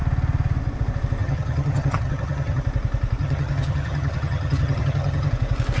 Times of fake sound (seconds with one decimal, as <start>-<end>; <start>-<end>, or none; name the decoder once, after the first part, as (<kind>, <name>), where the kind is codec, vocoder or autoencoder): 1.2-2.6 (vocoder, HiFi-GAN); 3.2-5.3

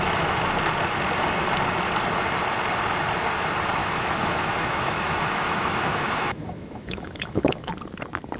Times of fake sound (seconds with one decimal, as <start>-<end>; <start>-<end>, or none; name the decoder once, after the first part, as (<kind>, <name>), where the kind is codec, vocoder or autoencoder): 3.8-7.7 (autoencoder, DAC-VAE)

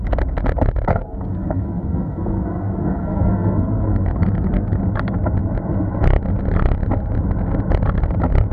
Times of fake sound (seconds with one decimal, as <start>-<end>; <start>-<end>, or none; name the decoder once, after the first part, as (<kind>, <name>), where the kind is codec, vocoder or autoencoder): 0.9-4.8 (codec, SNAC)

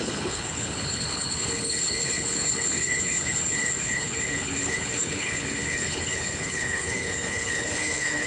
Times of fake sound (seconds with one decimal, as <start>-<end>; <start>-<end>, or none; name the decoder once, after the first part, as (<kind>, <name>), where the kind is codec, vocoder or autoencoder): 0.0-8.3 (codec, HILCodec)

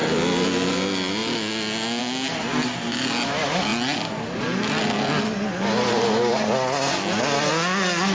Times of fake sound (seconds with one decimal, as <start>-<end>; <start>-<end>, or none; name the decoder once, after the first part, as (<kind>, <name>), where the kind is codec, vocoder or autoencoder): none

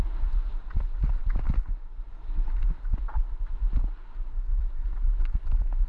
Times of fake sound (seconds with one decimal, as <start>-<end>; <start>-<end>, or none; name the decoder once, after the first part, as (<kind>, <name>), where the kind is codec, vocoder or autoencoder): none

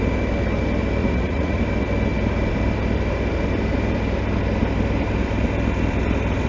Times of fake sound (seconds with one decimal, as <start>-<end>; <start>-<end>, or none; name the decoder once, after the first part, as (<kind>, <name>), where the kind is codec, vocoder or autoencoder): 1.0-1.6 (vocoder, Vocos)

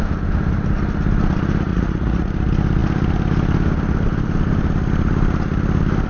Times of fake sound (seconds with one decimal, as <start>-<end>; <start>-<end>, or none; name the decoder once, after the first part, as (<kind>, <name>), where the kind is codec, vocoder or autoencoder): 1.7-2.3 (vocoder, Vocos)